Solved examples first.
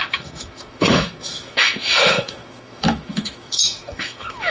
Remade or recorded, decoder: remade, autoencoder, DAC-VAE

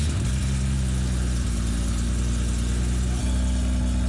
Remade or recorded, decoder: recorded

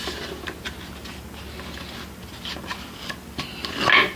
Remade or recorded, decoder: recorded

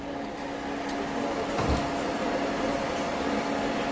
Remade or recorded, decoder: recorded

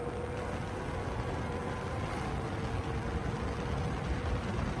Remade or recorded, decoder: recorded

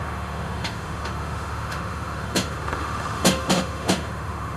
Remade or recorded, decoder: remade, autoencoder, DAC-VAE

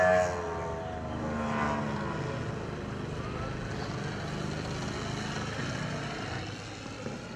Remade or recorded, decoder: recorded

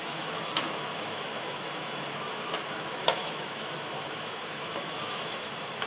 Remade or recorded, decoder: remade, autoencoder, DAC-VAE